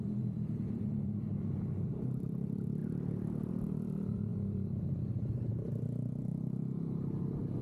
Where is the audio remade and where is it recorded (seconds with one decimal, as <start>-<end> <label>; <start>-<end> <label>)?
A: 0.0-6.3 remade; 6.3-7.6 recorded